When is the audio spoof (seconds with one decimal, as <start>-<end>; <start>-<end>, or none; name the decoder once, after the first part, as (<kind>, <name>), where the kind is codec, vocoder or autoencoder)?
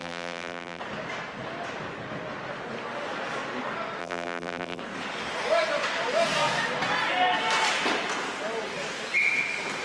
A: 0.0-0.8 (vocoder, BigVGAN v2); 4.0-4.8